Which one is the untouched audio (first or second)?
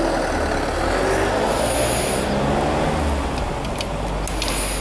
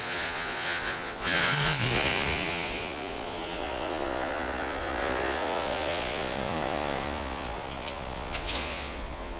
first